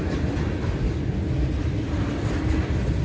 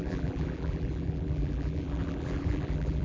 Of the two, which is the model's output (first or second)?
second